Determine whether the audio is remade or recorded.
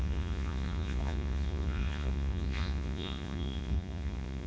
remade